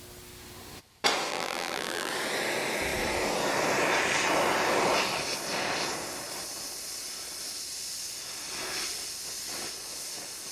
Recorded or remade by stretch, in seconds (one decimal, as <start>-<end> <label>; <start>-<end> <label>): 0.0-1.3 recorded; 1.3-2.1 remade; 2.1-10.5 recorded